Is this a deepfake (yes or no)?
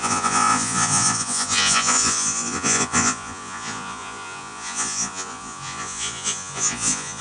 yes